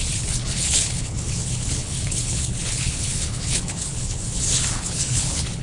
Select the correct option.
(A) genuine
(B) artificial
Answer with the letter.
B